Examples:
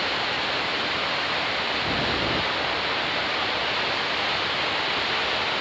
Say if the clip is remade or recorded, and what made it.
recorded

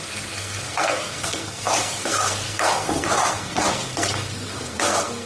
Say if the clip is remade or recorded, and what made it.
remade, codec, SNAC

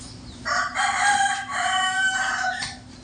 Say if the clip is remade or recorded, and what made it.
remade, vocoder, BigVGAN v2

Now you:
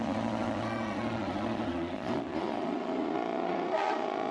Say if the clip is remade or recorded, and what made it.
remade, vocoder, Vocos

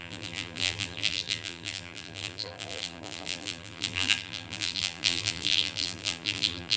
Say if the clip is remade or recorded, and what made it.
remade, vocoder, BigVGAN v2